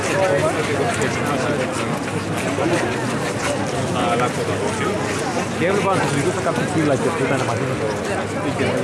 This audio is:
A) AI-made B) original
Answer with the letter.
B